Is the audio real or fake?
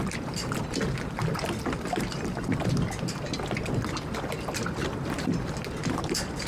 real